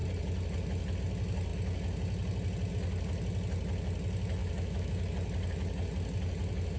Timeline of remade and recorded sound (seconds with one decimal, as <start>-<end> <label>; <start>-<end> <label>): 0.0-4.4 recorded; 4.4-4.9 remade; 4.9-6.8 recorded

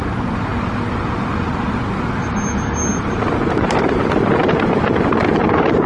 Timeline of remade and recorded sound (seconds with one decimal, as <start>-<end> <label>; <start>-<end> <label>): 0.0-5.9 recorded

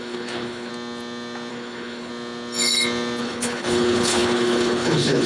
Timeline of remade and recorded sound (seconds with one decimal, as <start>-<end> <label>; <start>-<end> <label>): 0.0-0.7 remade; 0.7-1.5 recorded; 1.5-2.1 remade; 2.1-3.2 recorded; 3.2-5.3 remade

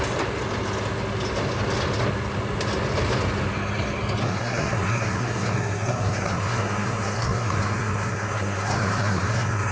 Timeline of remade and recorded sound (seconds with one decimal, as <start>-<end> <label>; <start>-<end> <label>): 0.0-4.2 recorded; 4.2-9.7 remade

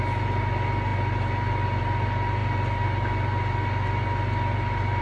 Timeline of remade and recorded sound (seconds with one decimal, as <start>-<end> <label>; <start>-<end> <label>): 0.0-5.0 recorded

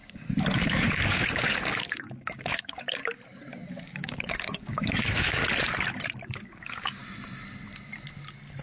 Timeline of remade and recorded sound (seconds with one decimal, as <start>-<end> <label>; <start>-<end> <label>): 0.0-3.0 remade; 3.0-3.7 recorded; 3.7-5.4 remade; 5.4-6.4 recorded; 6.4-7.0 remade; 7.0-8.6 recorded

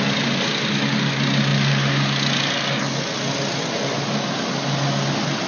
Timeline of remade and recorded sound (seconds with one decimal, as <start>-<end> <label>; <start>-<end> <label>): 0.0-5.5 recorded